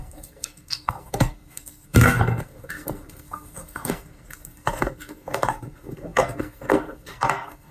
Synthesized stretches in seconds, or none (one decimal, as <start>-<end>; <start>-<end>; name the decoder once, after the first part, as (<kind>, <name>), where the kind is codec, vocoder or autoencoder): 0.0-7.7 (codec, SNAC)